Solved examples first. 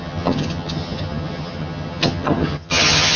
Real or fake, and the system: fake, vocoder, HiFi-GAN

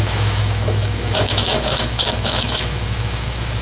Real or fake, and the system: fake, autoencoder, DAC-VAE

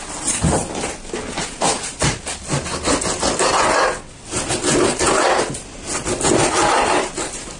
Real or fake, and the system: real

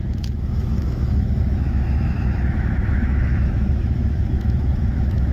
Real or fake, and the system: fake, autoencoder, DAC-VAE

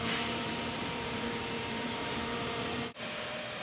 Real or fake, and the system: fake, vocoder, BigVGAN v2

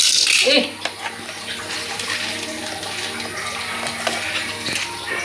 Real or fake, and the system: real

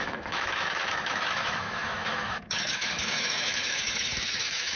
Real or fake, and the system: fake, autoencoder, DAC-VAE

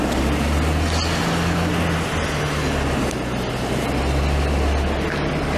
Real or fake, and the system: real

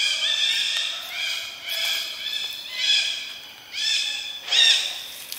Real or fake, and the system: real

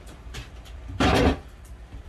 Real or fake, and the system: fake, vocoder, BigVGAN v2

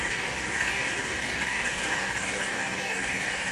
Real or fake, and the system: fake, codec, DAC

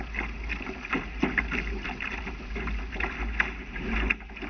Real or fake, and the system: real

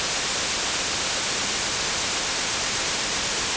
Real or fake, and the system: real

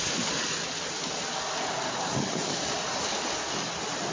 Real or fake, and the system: real